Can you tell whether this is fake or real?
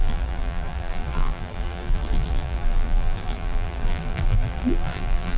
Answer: fake